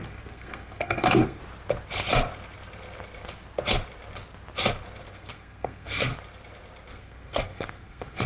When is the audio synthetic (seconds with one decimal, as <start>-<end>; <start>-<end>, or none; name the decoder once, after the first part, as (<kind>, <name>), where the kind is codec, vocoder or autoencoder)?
0.0-1.4 (codec, SNAC); 5.1-6.1; 6.9-8.3